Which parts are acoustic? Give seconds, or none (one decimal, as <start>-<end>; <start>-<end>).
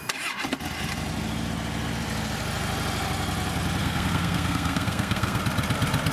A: 0.0-3.8; 5.4-6.1